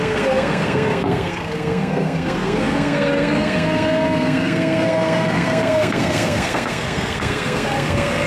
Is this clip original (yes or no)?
no